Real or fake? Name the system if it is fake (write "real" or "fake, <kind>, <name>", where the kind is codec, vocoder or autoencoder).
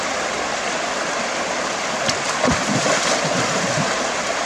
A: fake, vocoder, BigVGAN v2